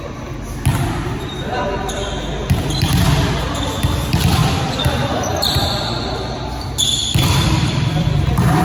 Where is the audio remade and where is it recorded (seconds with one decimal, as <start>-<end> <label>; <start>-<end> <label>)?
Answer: 0.0-0.7 recorded; 0.7-2.2 remade; 2.2-4.4 recorded; 4.4-8.6 remade